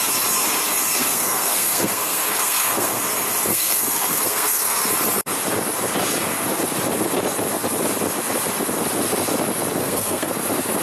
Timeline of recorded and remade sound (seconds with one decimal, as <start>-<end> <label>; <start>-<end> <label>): 0.0-0.9 recorded; 0.9-3.0 remade; 3.0-3.5 recorded; 3.5-4.9 remade; 4.9-9.8 recorded; 9.8-10.3 remade; 10.3-10.8 recorded